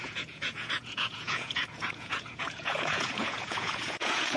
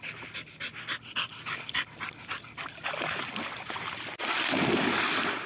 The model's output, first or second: first